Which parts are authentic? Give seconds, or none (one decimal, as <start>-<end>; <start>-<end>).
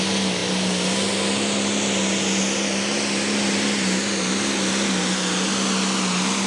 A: 0.0-6.5